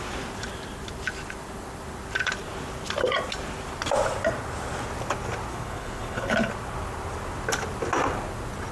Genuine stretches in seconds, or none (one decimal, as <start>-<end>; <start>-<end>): 0.0-5.5; 6.5-8.7